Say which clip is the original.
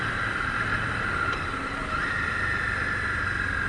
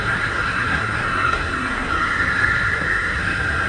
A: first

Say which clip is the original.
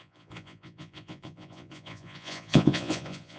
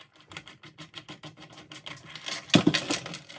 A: second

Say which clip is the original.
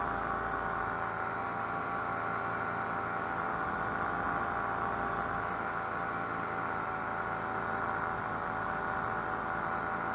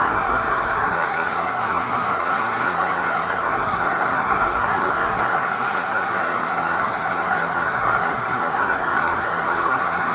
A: first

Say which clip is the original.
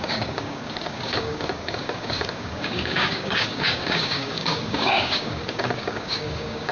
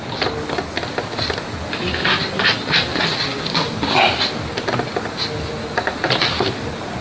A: second